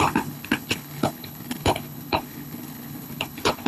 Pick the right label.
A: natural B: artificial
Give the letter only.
B